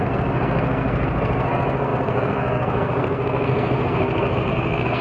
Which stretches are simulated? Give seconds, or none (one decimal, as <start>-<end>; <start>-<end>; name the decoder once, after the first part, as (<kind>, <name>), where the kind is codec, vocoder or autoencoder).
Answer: 0.0-5.0 (codec, SNAC)